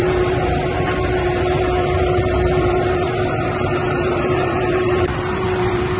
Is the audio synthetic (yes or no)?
yes